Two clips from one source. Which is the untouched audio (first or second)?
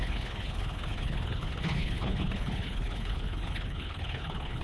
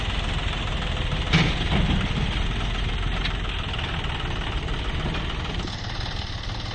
second